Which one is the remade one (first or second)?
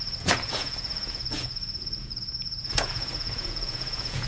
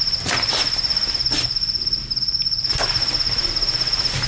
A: first